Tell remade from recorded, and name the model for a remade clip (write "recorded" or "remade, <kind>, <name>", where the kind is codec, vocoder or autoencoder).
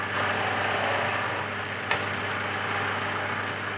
recorded